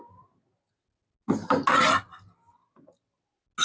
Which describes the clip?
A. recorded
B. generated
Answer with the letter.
A